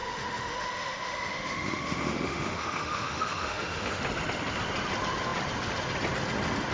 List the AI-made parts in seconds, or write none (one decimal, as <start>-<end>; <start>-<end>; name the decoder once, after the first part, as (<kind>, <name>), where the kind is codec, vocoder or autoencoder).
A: 0.0-4.0 (autoencoder, DAC-VAE)